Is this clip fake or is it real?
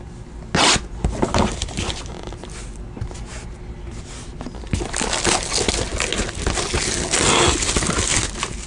real